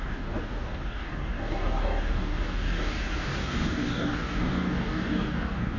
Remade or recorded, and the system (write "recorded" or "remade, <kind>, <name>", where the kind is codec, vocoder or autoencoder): remade, codec, DAC